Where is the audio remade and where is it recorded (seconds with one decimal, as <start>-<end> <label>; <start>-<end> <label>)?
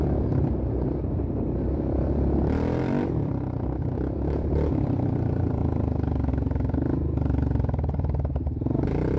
0.0-5.6 remade; 5.6-6.3 recorded; 6.3-9.2 remade